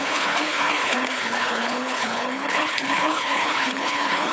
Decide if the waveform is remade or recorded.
remade